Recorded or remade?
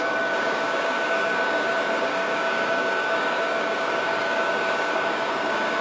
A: remade